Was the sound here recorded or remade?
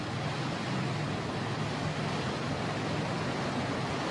recorded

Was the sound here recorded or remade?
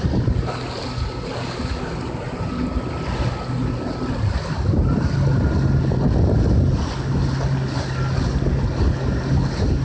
recorded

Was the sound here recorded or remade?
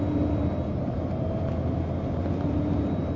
recorded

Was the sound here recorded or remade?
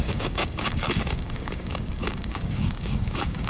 remade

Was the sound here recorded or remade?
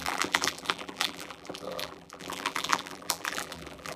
remade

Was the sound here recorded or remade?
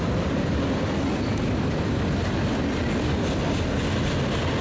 recorded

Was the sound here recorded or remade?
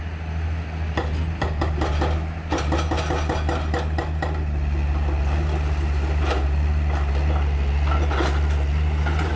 recorded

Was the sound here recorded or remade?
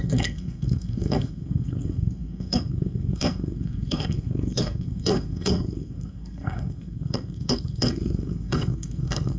remade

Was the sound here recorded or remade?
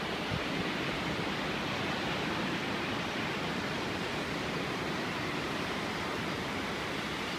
remade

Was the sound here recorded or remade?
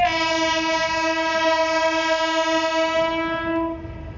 recorded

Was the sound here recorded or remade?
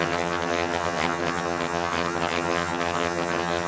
remade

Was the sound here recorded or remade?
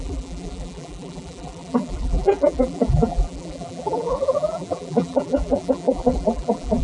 remade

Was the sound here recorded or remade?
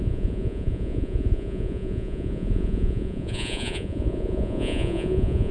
remade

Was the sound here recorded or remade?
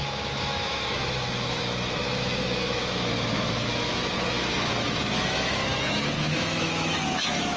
remade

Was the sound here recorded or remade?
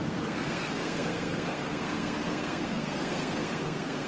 remade